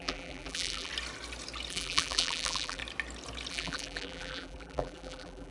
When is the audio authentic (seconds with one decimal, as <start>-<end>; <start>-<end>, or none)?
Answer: 0.9-1.7; 2.8-3.5